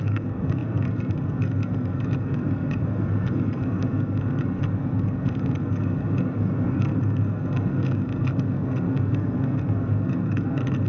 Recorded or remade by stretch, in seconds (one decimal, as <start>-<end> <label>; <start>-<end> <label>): 0.0-10.9 remade